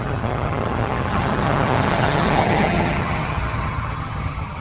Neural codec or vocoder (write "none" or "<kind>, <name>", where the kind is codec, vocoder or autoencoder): vocoder, HiFi-GAN